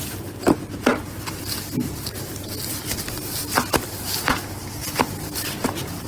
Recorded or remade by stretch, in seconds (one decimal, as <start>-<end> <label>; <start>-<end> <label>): 0.0-6.1 recorded